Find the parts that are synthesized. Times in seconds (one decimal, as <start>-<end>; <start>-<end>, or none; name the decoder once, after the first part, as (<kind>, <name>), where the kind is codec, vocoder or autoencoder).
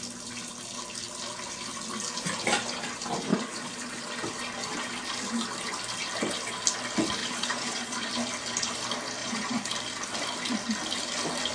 3.3-4.1 (vocoder, Vocos); 7.2-8.1; 9.2-9.7